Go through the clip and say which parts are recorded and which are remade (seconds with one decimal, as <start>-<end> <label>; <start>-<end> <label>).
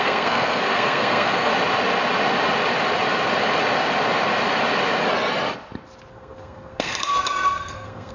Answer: 0.0-1.5 remade; 1.5-6.1 recorded; 6.1-8.1 remade